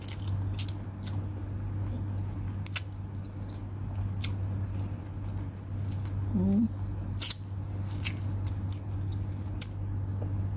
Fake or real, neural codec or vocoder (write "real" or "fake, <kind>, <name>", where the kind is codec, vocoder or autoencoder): real